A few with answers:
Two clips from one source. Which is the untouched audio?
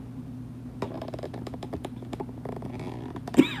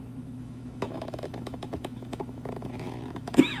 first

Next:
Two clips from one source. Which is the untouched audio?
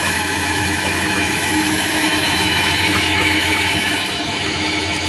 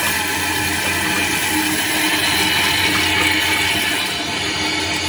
second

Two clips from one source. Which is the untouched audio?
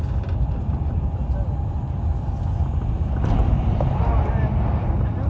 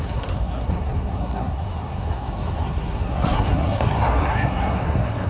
first